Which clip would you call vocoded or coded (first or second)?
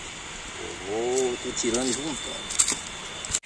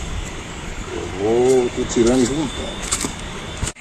second